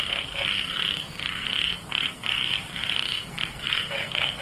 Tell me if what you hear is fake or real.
fake